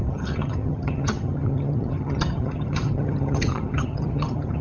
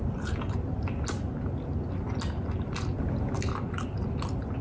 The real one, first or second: second